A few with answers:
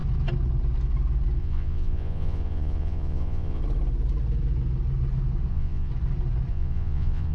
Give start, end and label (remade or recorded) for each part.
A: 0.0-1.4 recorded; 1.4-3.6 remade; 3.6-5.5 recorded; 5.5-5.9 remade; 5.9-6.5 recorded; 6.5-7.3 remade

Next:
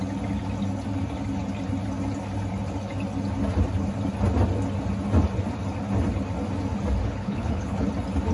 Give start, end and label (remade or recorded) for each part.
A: 0.0-7.0 recorded; 7.0-7.9 remade; 7.9-8.3 recorded

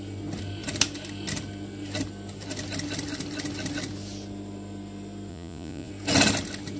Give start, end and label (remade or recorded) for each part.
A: 0.0-5.3 recorded; 5.3-5.9 remade; 5.9-6.8 recorded